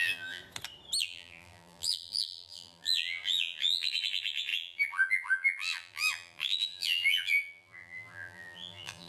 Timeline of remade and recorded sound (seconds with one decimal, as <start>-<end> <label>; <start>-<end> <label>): 0.0-0.4 remade; 0.4-1.0 recorded; 1.0-9.1 remade

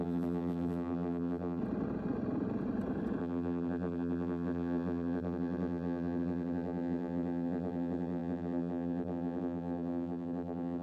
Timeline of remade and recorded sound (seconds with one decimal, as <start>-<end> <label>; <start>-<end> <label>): 0.0-1.6 remade; 1.6-3.2 recorded; 3.2-10.8 remade